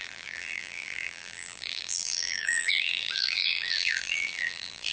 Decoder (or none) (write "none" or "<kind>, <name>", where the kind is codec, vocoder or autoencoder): vocoder, BigVGAN v2